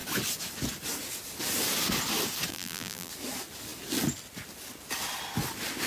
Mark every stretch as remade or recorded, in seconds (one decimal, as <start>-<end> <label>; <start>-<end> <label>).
0.0-2.5 recorded; 2.5-3.1 remade; 3.1-5.9 recorded